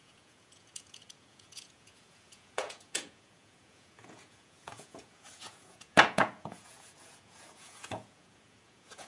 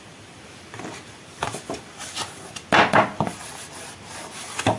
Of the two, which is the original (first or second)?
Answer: second